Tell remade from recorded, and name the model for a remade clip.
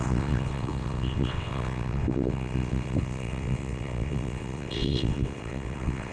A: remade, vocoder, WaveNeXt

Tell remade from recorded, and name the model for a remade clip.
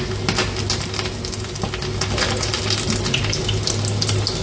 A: recorded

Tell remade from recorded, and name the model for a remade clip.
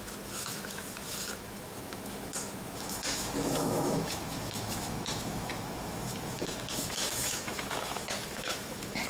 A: remade, autoencoder, DAC-VAE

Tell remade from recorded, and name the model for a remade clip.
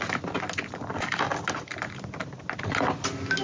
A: recorded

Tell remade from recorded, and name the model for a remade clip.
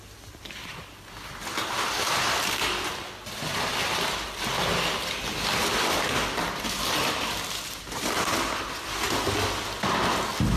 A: recorded